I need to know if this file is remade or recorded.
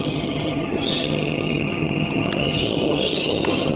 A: remade